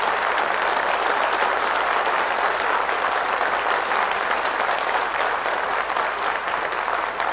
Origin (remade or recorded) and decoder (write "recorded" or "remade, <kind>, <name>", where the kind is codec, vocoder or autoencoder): recorded